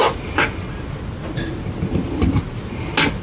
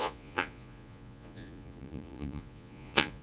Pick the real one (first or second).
first